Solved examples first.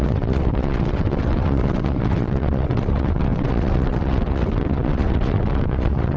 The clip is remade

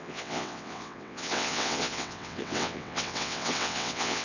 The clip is remade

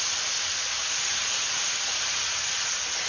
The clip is recorded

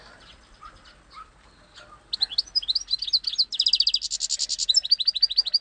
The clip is recorded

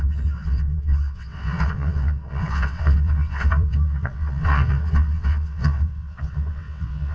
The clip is remade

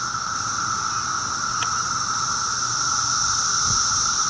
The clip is recorded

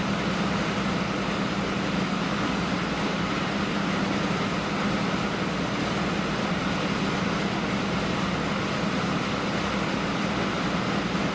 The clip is recorded